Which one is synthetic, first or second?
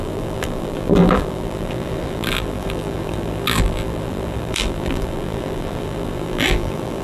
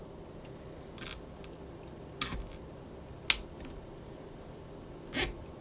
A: first